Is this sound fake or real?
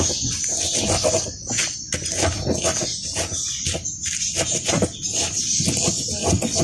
real